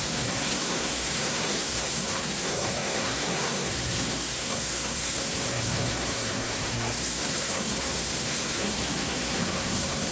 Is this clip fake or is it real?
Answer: fake